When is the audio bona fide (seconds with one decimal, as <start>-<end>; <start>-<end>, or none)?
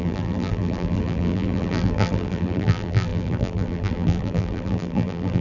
none